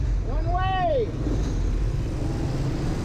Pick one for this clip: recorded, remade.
recorded